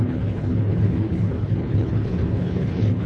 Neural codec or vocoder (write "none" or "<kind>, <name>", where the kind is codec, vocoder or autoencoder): codec, HILCodec